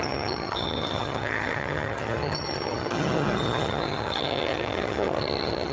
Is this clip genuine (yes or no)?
no